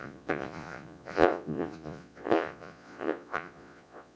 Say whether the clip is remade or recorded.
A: remade